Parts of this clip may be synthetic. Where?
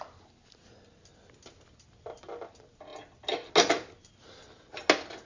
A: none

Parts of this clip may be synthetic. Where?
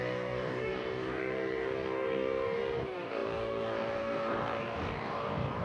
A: 0.0-5.6 (codec, DAC)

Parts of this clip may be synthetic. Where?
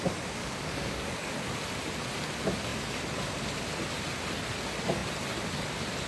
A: 0.4-1.3 (codec, DAC)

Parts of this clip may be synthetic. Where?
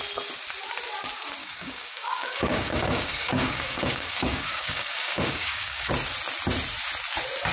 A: 1.4-5.9 (codec, DAC)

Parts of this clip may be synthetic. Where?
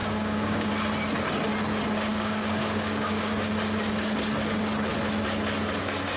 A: 0.0-0.7 (codec, DAC); 2.1-3.5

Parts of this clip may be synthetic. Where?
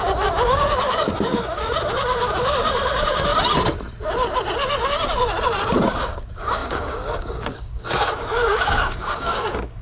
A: 0.0-3.3 (codec, DAC); 5.9-9.8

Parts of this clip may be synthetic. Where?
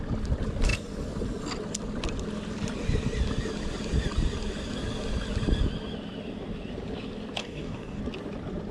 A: 7.4-8.0 (codec, DAC)